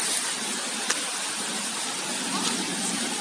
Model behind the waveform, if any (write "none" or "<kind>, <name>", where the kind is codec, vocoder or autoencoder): none